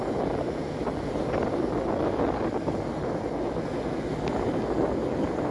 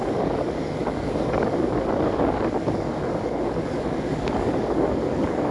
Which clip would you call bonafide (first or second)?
first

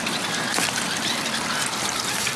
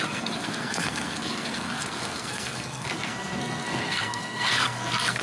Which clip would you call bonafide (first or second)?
first